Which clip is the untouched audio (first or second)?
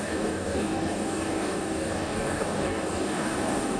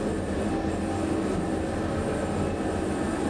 second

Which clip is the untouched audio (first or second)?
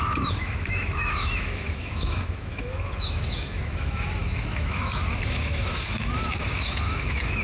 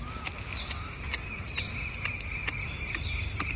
second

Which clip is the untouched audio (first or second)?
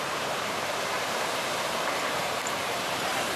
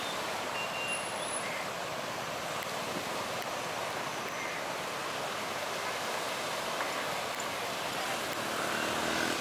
second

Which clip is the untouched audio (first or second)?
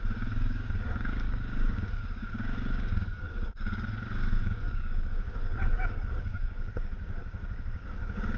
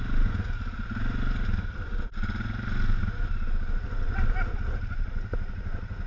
second